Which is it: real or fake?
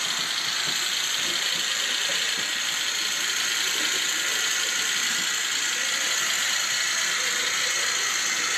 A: real